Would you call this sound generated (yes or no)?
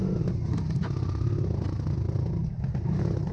no